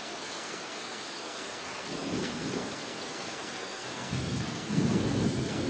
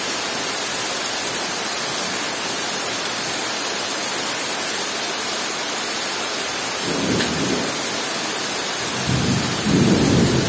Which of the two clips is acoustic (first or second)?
second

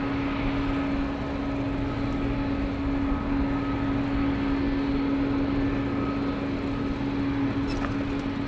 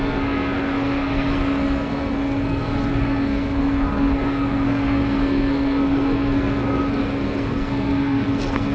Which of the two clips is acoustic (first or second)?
first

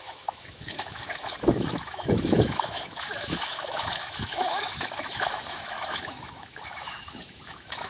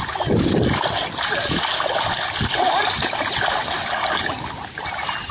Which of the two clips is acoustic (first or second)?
second